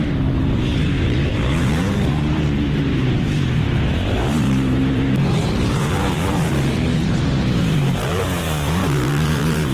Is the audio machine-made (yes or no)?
yes